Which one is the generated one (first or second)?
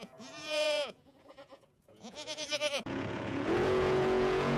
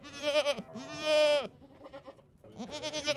first